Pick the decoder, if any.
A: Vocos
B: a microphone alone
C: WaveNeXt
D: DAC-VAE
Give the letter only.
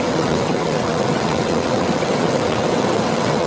C